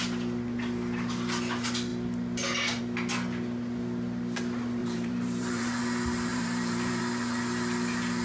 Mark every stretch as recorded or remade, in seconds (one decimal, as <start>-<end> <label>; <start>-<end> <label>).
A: 0.0-4.8 recorded; 4.8-5.8 remade; 5.8-6.3 recorded; 6.3-7.0 remade; 7.0-8.2 recorded